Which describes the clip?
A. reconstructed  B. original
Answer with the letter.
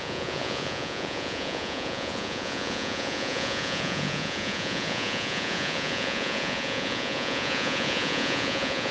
A